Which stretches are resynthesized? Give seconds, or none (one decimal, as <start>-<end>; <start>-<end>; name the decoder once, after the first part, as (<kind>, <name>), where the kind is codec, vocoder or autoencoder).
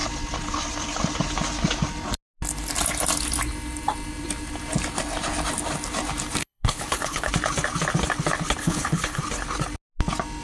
6.4-7.3 (codec, HILCodec); 8.6-9.2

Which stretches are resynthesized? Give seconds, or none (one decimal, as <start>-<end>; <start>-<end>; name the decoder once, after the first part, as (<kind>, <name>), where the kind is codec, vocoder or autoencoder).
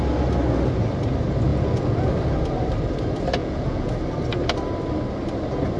1.5-2.1 (vocoder, Vocos); 3.4-3.9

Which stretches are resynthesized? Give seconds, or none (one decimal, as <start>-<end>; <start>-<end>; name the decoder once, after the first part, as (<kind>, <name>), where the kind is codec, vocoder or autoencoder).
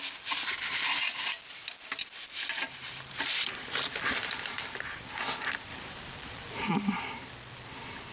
1.9-5.2 (vocoder, BigVGAN v2); 5.7-6.7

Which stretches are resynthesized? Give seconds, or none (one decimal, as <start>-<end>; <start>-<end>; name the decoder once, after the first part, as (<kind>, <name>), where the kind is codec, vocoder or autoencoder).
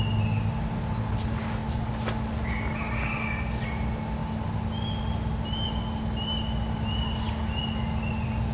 none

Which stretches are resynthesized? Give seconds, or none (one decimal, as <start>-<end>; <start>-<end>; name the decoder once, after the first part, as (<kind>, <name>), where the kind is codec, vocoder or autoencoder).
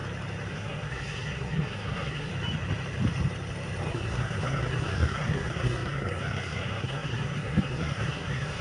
0.5-2.3 (codec, SNAC); 3.9-8.6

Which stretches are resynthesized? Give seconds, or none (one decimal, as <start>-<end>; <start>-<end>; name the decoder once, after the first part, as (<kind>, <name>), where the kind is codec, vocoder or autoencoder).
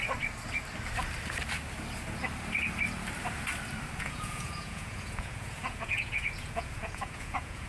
4.0-7.7 (vocoder, Vocos)